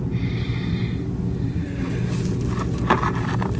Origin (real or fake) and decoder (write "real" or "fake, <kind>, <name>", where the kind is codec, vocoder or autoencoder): real